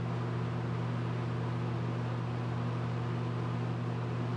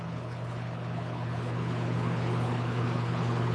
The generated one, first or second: second